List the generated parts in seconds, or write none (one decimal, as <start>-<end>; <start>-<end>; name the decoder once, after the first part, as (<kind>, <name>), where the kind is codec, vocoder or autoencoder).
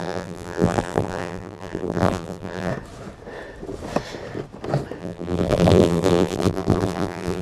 0.0-2.7 (vocoder, BigVGAN v2); 5.0-7.4